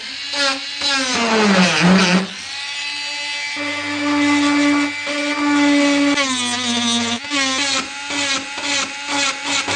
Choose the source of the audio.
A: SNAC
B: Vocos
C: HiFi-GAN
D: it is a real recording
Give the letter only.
D